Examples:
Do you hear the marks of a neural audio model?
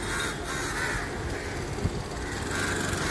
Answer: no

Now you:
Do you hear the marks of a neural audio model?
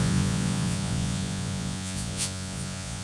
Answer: yes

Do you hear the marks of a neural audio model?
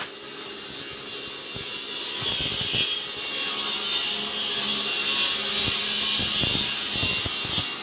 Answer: no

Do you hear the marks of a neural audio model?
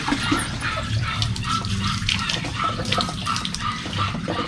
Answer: yes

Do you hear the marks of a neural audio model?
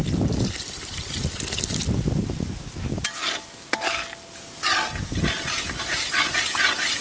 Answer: no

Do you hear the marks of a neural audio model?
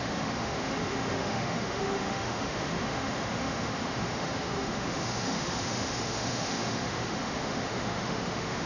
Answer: yes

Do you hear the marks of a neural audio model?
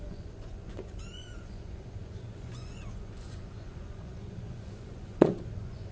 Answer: yes